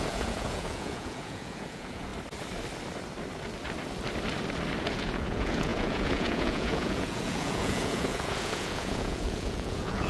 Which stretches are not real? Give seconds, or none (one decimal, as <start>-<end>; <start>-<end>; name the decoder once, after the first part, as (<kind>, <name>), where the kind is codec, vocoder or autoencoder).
0.0-2.1 (vocoder, Vocos); 4.8-10.1